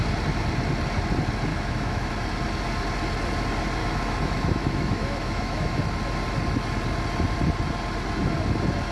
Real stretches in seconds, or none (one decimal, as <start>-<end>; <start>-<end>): 0.0-1.5; 2.1-3.8; 5.8-8.9

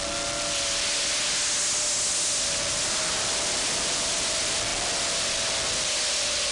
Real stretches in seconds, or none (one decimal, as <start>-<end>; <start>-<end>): 0.0-6.5

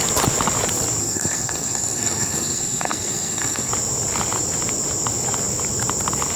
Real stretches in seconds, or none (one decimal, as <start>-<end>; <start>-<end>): 0.0-1.0; 3.7-6.4

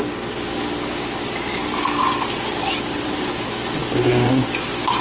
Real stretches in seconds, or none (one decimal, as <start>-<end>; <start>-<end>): 0.0-1.6; 3.3-3.8; 4.4-5.0

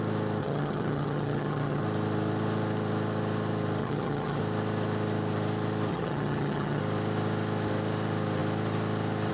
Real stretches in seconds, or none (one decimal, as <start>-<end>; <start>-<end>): 0.0-0.4; 1.8-3.8; 4.4-5.9; 6.8-9.3

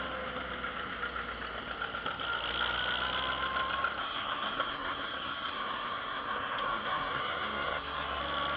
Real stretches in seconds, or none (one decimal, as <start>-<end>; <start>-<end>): 0.0-4.0; 8.2-8.6

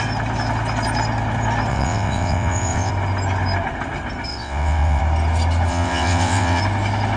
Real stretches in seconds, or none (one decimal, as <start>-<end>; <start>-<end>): 0.0-1.7; 2.9-4.3; 5.0-5.7; 6.6-7.2